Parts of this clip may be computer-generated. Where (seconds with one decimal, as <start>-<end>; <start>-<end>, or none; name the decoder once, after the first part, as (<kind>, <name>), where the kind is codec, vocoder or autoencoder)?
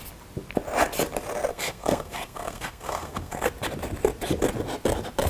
1.5-3.5 (codec, SNAC)